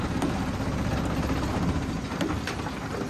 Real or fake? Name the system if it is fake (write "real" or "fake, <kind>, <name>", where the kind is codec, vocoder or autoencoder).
real